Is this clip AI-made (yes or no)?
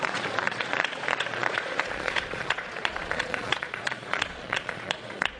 yes